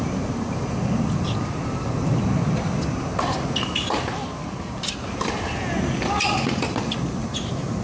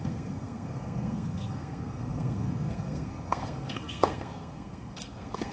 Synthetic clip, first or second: second